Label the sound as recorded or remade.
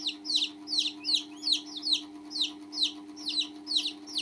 recorded